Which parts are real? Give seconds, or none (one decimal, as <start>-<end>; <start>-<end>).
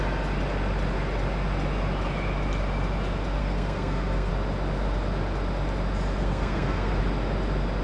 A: 0.0-3.4; 4.3-6.2; 7.0-7.8